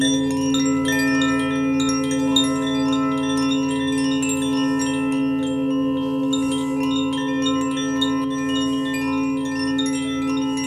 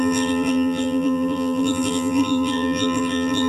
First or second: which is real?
first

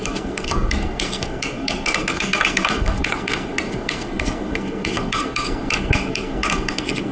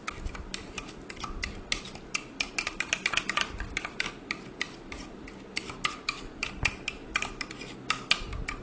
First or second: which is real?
second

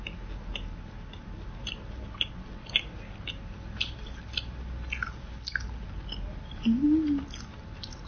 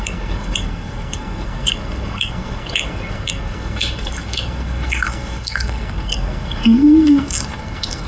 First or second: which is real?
first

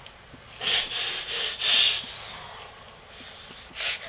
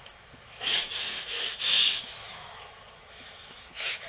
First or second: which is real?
first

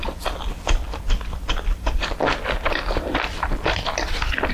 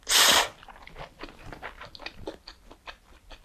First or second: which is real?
second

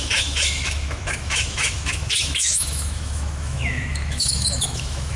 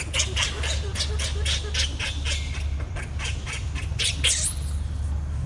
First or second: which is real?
second